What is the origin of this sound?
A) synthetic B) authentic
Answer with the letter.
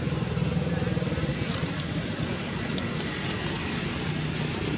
B